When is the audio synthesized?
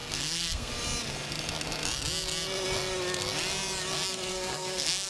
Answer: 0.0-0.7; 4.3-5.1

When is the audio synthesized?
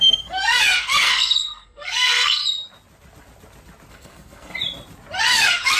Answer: 0.0-2.4; 3.9-4.5; 5.2-5.8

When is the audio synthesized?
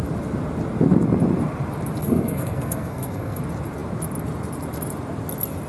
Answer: 2.0-3.4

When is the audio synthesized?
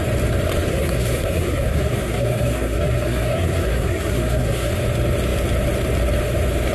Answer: 0.7-4.7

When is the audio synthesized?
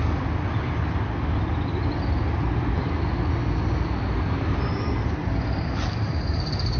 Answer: none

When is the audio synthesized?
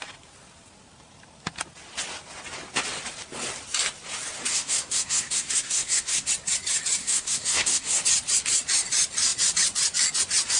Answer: 4.5-6.3; 7.0-8.0